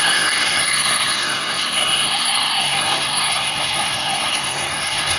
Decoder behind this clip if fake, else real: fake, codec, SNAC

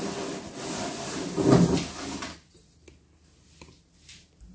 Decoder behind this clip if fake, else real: real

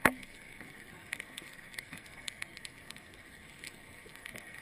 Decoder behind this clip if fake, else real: fake, codec, SNAC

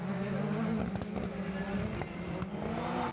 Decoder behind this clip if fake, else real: real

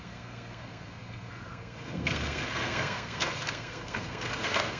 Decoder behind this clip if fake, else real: fake, codec, SNAC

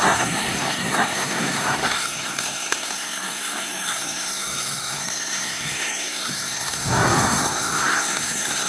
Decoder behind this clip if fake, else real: fake, codec, SNAC